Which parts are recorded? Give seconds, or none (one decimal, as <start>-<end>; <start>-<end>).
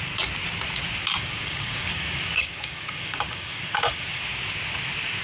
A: 0.0-1.1; 4.2-5.2